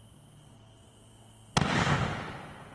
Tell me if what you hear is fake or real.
real